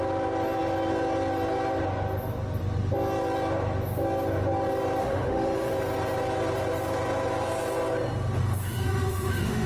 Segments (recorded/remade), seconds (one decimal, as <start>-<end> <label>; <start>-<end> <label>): 0.0-5.0 recorded; 5.0-5.7 remade; 5.7-8.4 recorded; 8.4-9.7 remade